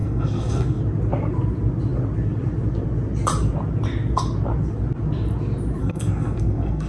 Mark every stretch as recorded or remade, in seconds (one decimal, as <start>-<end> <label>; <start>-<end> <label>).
0.0-0.8 remade; 0.8-5.8 recorded; 5.8-6.9 remade